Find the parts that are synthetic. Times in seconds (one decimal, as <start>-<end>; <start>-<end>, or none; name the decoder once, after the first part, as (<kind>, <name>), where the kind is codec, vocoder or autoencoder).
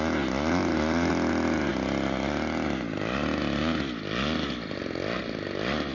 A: none